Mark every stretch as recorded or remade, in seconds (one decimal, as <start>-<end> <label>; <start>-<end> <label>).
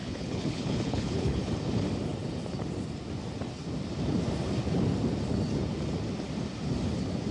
0.0-1.5 remade; 1.5-7.3 recorded